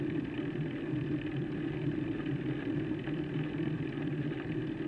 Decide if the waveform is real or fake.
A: real